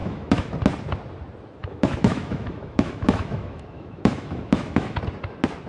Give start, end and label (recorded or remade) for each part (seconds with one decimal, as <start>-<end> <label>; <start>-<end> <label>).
0.0-0.5 remade; 0.5-1.6 recorded; 1.6-5.0 remade; 5.0-5.7 recorded